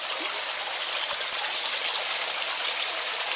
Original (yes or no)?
yes